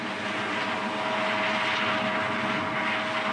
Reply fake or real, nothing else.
real